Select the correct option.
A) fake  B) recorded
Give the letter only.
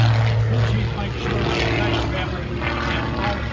B